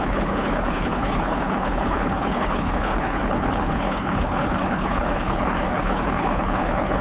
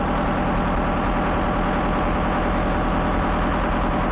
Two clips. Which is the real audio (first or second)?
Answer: second